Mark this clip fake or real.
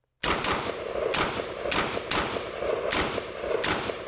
real